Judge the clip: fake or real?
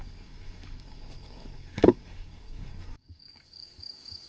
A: fake